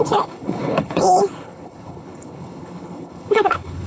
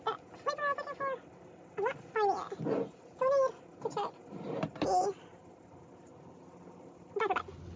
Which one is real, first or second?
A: second